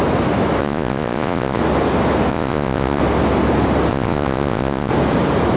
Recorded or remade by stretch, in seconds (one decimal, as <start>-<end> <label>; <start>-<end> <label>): 0.0-0.6 recorded; 0.6-1.6 remade; 1.6-2.3 recorded; 2.3-3.0 remade; 3.0-3.9 recorded; 3.9-4.9 remade; 4.9-5.6 recorded